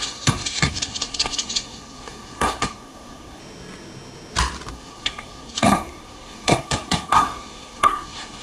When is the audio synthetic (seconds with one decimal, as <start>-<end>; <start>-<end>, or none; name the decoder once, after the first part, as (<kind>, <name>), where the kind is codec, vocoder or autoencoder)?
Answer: 0.0-3.4 (codec, SNAC); 4.7-8.4